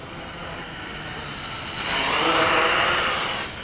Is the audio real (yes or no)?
yes